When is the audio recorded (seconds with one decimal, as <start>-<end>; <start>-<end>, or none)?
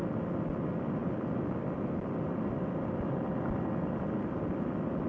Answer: 0.0-1.0; 3.7-5.1